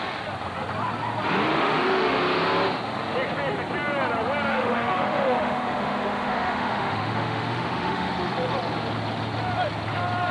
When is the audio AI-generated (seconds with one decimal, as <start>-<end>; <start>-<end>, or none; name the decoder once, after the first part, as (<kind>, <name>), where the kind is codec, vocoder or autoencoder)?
1.5-2.2 (autoencoder, DAC-VAE); 4.5-8.1